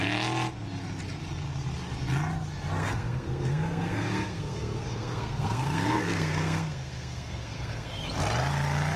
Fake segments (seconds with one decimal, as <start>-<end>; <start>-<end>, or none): 2.8-8.0